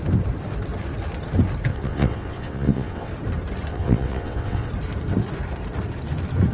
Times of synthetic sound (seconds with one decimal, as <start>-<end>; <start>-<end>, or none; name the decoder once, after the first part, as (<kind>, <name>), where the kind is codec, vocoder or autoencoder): 1.7-3.1 (vocoder, WaveNeXt); 3.7-4.7